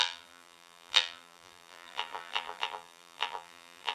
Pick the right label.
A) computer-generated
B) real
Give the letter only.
A